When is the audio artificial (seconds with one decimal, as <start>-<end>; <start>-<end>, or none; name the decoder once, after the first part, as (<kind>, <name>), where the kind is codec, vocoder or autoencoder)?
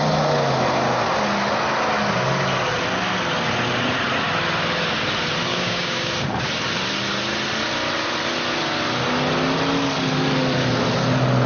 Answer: 5.5-6.1 (codec, DAC)